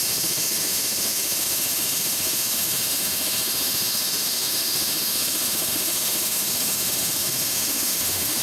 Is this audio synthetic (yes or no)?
yes